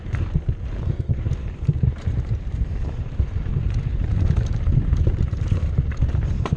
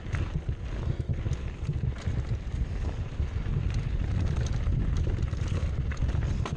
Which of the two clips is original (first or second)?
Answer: second